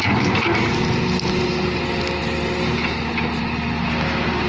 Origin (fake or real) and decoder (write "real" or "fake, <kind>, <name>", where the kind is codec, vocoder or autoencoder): real